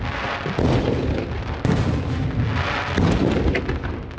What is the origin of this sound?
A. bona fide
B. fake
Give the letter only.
A